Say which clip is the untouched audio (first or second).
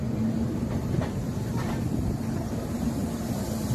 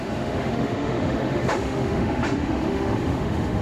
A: first